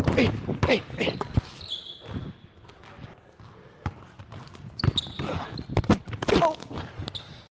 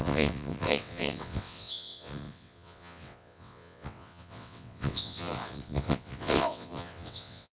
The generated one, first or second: second